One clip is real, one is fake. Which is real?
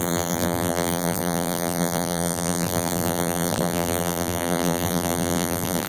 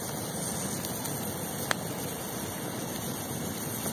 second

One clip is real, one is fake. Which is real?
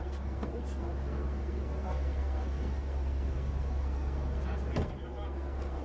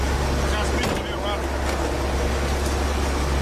second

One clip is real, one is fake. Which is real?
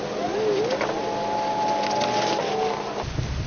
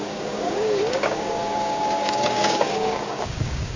first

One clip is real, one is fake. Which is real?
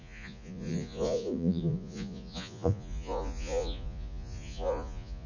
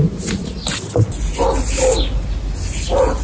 second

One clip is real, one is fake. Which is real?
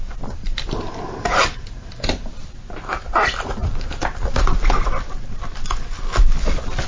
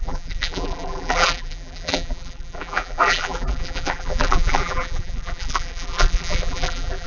first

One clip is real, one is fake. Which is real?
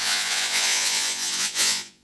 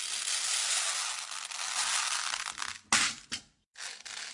second